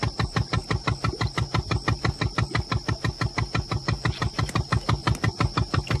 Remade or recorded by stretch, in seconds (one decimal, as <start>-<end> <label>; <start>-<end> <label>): 0.0-5.0 recorded; 5.0-6.0 remade